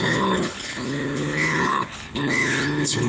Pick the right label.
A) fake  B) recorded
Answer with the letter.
A